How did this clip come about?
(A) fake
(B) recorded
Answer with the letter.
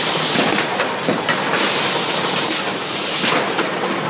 B